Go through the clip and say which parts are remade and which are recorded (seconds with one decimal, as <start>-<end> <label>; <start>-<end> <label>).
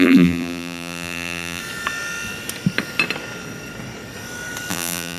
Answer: 0.0-1.6 remade; 1.6-4.7 recorded; 4.7-5.2 remade